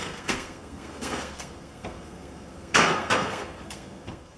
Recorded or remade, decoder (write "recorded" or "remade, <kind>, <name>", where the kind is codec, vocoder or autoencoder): remade, codec, SNAC